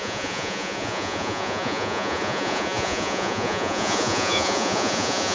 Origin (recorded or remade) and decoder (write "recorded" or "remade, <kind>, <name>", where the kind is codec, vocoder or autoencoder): remade, vocoder, Vocos